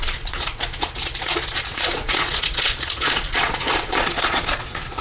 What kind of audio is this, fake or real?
fake